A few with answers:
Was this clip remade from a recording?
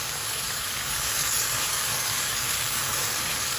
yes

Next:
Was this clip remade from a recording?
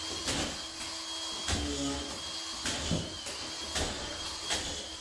no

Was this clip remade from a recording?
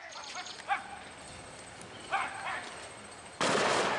no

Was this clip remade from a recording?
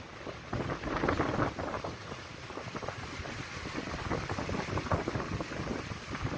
no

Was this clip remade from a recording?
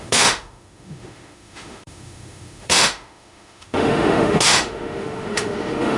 yes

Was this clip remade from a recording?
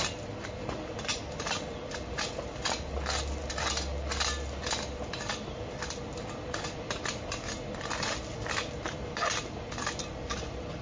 no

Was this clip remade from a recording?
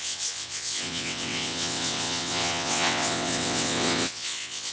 yes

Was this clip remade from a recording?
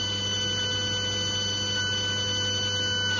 no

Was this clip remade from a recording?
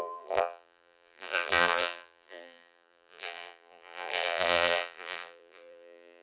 yes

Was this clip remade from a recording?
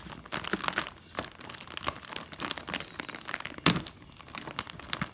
no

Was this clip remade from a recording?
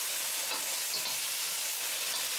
no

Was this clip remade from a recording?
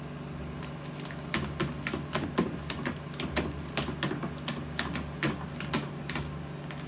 no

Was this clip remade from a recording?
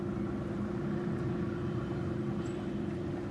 no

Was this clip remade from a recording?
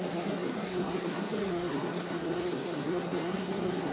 yes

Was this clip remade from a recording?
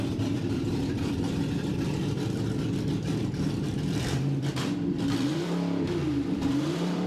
yes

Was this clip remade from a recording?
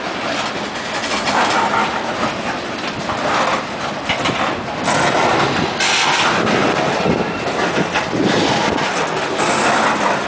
no